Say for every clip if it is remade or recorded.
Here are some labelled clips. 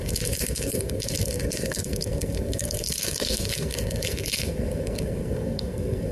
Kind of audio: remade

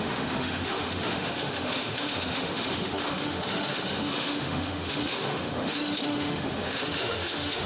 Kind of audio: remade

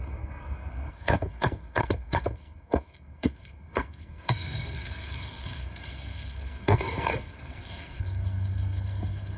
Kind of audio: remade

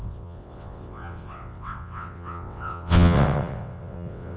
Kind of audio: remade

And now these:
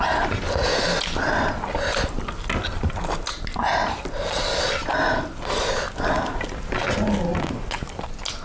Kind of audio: recorded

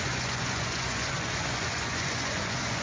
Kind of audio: remade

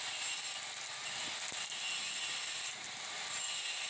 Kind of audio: recorded